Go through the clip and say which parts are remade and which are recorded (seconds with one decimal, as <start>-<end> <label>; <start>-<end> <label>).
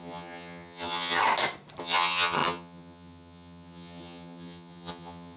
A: 0.0-1.2 remade; 1.2-1.8 recorded; 1.8-5.4 remade